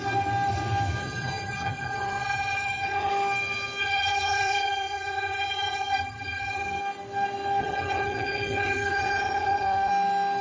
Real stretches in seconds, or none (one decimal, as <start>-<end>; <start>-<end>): 0.0-1.0; 3.1-3.8; 6.8-7.6; 9.9-10.4